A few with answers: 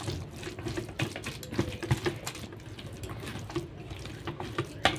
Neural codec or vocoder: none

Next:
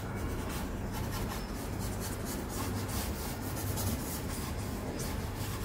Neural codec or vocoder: none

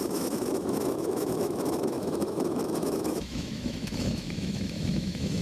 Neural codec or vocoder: autoencoder, DAC-VAE